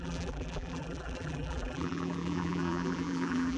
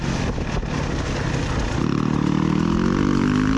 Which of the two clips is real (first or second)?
second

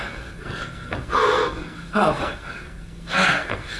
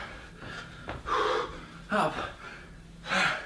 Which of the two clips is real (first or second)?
second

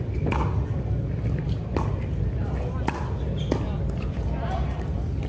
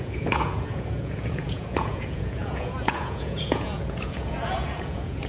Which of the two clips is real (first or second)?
first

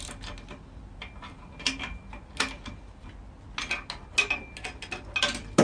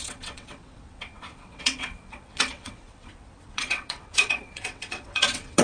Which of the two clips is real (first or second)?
first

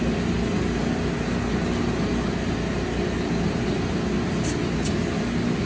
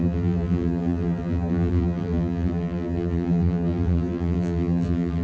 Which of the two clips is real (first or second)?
first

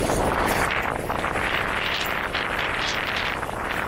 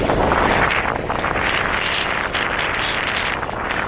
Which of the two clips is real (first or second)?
second